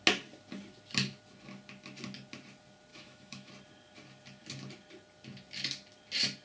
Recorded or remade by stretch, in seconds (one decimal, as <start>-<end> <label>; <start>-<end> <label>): 0.0-2.9 recorded; 2.9-3.5 remade; 3.5-6.4 recorded